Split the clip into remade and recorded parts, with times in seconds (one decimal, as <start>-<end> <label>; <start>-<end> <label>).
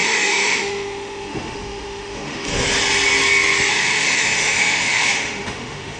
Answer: 0.0-2.5 remade; 2.5-3.7 recorded; 3.7-6.0 remade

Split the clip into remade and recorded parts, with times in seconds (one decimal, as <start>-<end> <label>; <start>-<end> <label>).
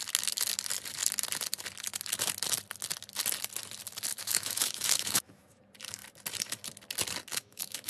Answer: 0.0-4.1 recorded; 4.1-5.6 remade; 5.6-7.3 recorded; 7.3-7.9 remade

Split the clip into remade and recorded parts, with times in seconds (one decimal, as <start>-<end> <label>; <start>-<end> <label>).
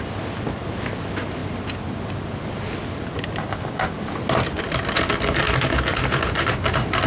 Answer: 0.0-7.1 recorded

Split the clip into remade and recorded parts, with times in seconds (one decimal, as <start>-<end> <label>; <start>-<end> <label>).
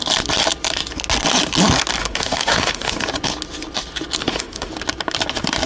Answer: 0.0-2.0 recorded; 2.0-3.0 remade; 3.0-4.2 recorded; 4.2-4.7 remade; 4.7-5.7 recorded